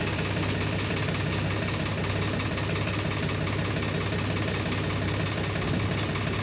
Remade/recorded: recorded